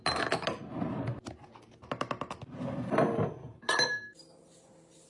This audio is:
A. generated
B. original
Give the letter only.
B